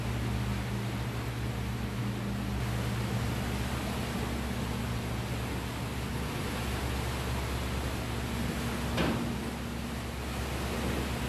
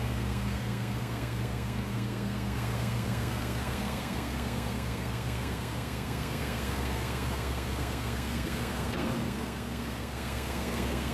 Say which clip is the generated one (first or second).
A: second